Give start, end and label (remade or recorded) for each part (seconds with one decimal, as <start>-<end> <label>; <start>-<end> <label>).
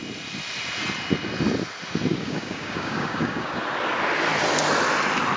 0.0-2.1 recorded; 2.1-3.6 remade; 3.6-5.4 recorded